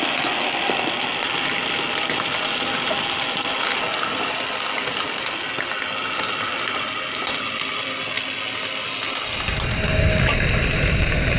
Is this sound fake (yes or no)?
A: no